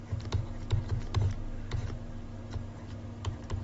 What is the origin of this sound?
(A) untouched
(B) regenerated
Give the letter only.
A